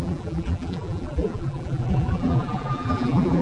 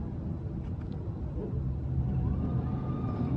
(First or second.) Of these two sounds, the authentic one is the second